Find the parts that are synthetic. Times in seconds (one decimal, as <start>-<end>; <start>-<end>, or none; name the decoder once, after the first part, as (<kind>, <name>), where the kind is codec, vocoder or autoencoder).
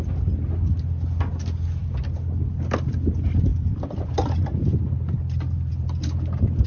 none